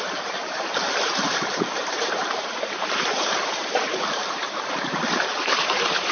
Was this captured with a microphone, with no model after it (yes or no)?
no